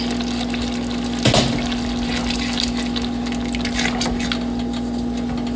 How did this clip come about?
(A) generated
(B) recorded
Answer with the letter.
B